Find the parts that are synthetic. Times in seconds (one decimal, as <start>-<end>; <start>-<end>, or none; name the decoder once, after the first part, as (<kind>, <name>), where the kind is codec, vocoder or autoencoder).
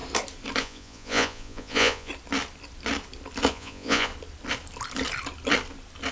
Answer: 0.6-2.1 (vocoder, Vocos); 3.5-4.1